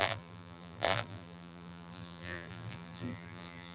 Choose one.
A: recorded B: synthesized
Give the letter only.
B